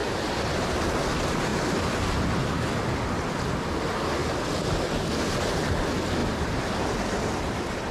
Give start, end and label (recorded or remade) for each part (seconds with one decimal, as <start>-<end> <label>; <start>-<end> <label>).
0.0-0.7 remade; 0.7-7.9 recorded